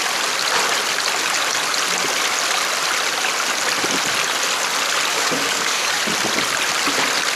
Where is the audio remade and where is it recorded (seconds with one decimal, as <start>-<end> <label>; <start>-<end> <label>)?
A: 0.0-5.1 recorded; 5.1-6.0 remade; 6.0-7.4 recorded